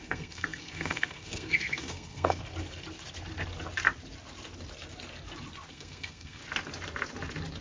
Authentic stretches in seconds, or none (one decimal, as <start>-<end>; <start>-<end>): 2.4-5.7; 6.4-7.6